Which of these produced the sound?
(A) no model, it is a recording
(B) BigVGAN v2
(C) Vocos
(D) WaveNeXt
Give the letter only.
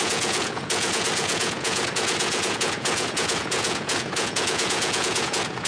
C